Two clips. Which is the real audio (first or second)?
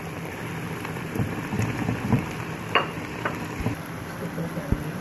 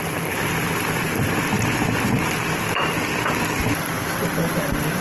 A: second